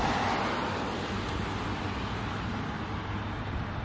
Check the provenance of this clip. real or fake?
real